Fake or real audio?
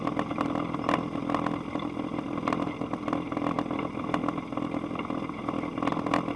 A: real